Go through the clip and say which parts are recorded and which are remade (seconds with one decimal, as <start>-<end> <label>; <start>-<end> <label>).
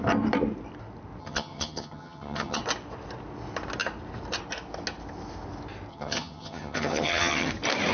0.0-1.2 recorded; 1.2-2.6 remade; 2.6-5.9 recorded; 5.9-7.5 remade; 7.5-7.9 recorded